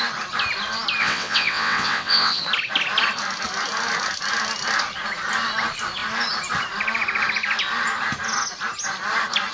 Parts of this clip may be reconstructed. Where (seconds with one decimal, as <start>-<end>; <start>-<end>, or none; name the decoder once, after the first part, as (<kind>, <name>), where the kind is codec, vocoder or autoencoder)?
1.0-2.4 (vocoder, WaveNeXt)